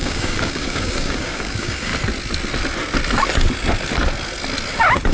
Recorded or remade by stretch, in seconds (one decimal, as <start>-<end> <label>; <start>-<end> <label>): 0.0-1.9 remade; 1.9-5.1 recorded